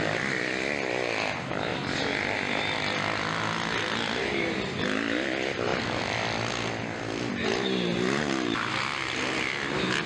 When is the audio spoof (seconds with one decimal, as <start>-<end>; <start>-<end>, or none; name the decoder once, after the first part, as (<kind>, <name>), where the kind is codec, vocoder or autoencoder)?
none